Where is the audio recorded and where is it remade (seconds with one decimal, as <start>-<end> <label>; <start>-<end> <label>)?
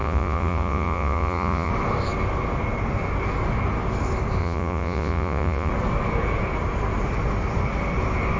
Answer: 0.0-1.7 remade; 1.7-4.4 recorded; 4.4-5.7 remade; 5.7-8.4 recorded